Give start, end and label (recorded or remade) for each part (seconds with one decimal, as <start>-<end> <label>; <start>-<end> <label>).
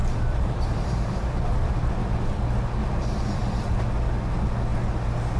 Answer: 0.0-1.9 remade; 1.9-2.8 recorded; 2.8-3.8 remade; 3.8-5.4 recorded